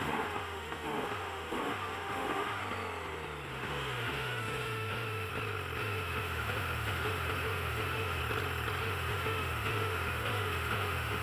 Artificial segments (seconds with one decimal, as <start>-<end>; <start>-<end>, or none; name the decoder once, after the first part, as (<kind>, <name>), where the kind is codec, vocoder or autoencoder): 0.0-2.6 (autoencoder, DAC-VAE); 3.5-5.3; 5.8-8.2; 8.8-11.2